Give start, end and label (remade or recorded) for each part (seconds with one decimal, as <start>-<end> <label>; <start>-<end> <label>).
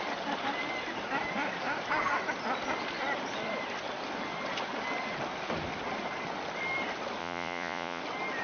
0.0-7.2 recorded; 7.2-8.0 remade; 8.0-8.4 recorded